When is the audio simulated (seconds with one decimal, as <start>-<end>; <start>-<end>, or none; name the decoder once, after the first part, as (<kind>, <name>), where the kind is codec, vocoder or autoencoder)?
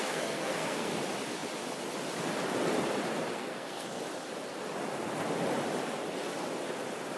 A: 0.0-0.9 (codec, SNAC); 3.3-4.0